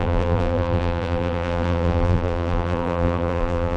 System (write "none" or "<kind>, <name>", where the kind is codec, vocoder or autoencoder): vocoder, BigVGAN v2